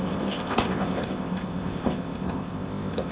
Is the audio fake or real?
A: fake